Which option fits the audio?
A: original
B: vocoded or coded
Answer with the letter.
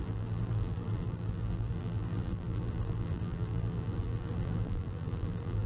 B